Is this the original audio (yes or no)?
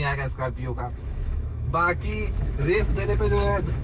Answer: no